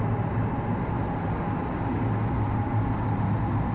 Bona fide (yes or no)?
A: yes